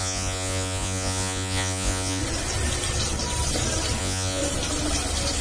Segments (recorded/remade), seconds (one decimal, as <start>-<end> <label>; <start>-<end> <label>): 0.0-2.2 remade; 2.2-4.0 recorded; 4.0-4.4 remade; 4.4-5.4 recorded